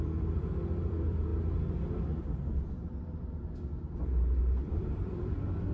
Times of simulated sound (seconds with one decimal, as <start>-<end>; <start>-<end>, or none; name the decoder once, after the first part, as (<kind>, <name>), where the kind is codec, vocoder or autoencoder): 0.0-1.3 (vocoder, BigVGAN v2); 4.7-5.7